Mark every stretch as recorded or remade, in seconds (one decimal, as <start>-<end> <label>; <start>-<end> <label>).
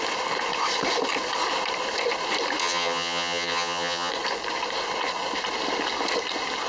0.0-2.6 recorded; 2.6-4.1 remade; 4.1-6.7 recorded